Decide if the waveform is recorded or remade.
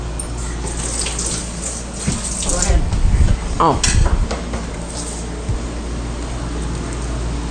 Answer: recorded